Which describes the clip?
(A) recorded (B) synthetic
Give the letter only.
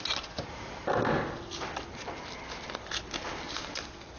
A